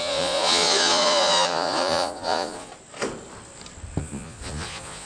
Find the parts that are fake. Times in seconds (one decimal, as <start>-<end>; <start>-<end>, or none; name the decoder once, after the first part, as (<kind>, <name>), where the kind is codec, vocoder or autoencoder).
0.0-2.7 (vocoder, Vocos); 4.0-5.1